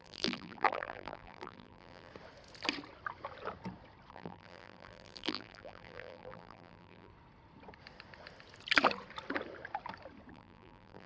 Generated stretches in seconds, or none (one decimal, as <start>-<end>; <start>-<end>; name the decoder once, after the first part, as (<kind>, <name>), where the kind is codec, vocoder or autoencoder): 0.0-2.1 (vocoder, BigVGAN v2); 4.1-7.1; 10.3-11.1